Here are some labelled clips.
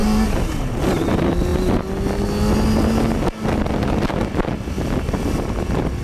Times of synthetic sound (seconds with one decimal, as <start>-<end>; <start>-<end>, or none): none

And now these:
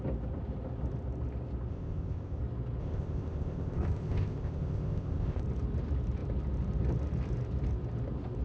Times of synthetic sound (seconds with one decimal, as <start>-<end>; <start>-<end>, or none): 1.7-2.4; 2.8-5.4

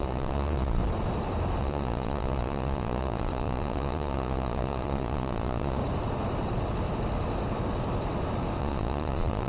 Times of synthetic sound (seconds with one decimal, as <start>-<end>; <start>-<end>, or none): 0.0-0.8; 1.6-5.8; 8.6-9.5

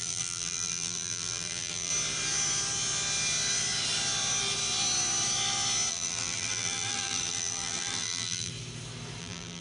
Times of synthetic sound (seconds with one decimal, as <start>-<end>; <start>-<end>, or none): 0.0-1.9; 5.9-8.5; 9.2-9.6